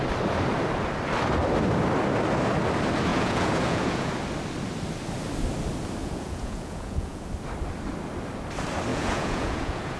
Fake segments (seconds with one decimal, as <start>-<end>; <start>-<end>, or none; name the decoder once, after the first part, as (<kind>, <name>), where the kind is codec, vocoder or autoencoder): 3.1-4.1 (vocoder, Vocos); 6.0-7.3; 8.9-10.0